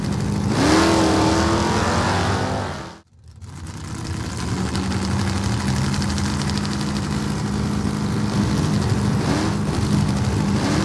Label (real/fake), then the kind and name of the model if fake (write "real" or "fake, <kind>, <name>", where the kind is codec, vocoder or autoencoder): real